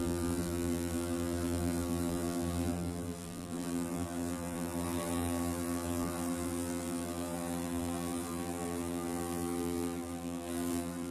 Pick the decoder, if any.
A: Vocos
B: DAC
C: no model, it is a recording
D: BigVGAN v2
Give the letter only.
D